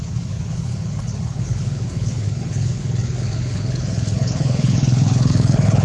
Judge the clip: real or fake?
fake